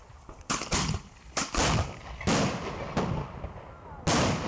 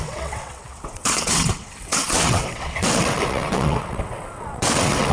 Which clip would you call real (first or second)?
first